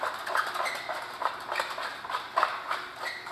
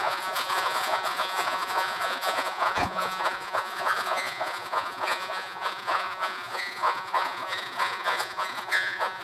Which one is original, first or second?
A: first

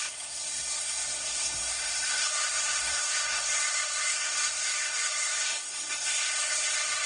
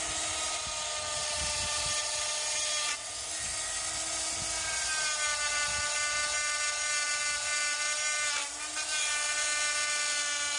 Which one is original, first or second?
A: second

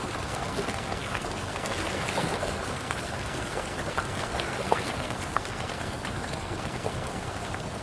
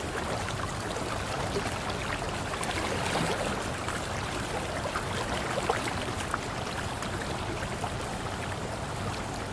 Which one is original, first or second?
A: second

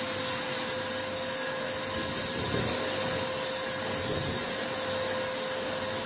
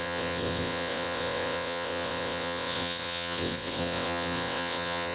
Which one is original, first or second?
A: first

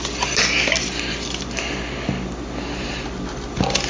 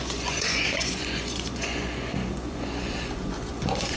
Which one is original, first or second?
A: first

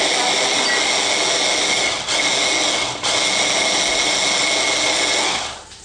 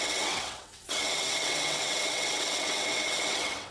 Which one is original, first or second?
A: first